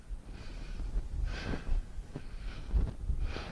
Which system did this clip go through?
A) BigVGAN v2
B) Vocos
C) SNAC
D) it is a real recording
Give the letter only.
D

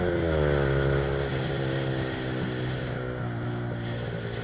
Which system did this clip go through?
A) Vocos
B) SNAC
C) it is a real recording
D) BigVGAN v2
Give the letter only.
C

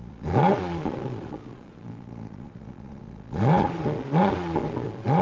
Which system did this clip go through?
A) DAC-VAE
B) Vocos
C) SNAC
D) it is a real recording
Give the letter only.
B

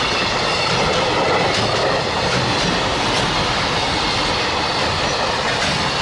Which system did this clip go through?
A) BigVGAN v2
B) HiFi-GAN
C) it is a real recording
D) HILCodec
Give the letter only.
C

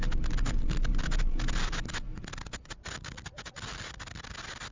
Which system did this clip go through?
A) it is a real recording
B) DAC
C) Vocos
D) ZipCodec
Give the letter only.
A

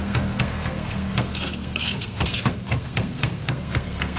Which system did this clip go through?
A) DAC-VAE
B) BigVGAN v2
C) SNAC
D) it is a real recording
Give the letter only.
C